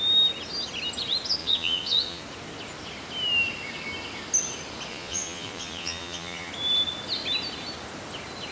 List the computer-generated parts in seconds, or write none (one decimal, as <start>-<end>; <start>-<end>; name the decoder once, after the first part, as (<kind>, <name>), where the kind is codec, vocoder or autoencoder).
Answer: 1.4-2.2 (vocoder, Vocos); 4.9-6.5